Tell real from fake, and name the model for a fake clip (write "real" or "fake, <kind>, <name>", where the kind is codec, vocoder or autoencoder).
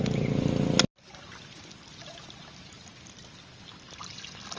real